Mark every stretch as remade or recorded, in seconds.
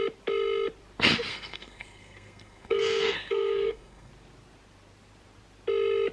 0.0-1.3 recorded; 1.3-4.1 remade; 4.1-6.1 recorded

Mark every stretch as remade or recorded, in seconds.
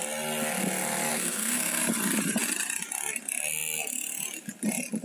0.0-1.1 recorded; 1.1-1.8 remade; 1.8-5.0 recorded